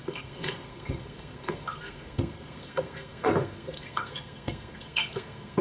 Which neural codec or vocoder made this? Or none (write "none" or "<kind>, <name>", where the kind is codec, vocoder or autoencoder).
codec, SNAC